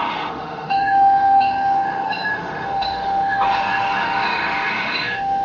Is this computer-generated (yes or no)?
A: yes